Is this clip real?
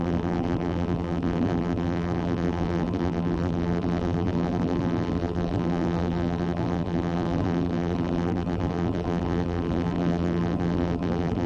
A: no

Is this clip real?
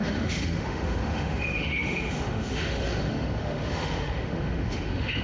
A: no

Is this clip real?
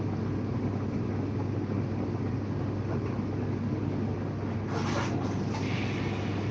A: yes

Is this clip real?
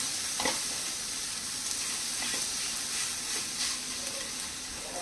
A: yes